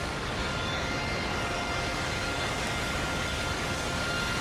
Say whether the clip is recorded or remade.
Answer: remade